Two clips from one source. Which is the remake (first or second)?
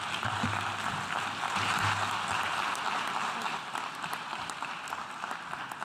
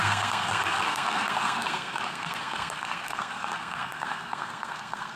second